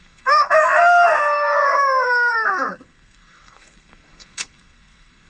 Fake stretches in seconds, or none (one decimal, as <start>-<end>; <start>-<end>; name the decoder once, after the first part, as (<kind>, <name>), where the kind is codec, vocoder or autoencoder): 0.0-5.3 (codec, SNAC)